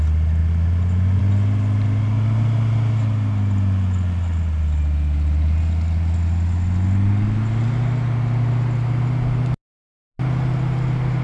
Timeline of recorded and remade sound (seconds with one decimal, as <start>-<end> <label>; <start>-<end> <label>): 0.0-11.2 recorded